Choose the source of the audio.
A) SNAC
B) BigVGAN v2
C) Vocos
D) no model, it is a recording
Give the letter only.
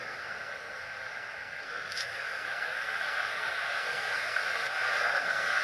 A